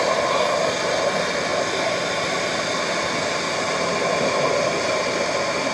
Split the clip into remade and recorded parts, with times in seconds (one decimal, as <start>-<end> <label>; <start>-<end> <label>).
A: 0.0-5.7 recorded